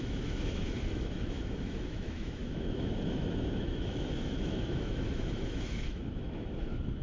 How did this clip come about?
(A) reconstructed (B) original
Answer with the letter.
A